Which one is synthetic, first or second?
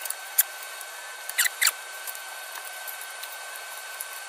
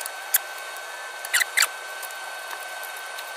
first